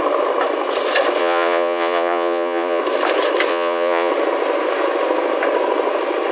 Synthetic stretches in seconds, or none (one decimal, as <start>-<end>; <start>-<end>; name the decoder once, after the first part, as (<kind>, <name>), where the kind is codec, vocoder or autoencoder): 1.2-2.8 (vocoder, Vocos); 3.5-4.1